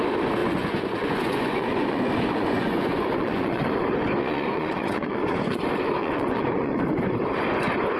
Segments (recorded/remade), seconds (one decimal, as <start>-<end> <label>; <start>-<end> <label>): 0.0-0.4 recorded; 0.4-3.7 remade; 3.7-4.2 recorded; 4.2-5.6 remade; 5.6-6.0 recorded; 6.0-6.8 remade; 6.8-8.0 recorded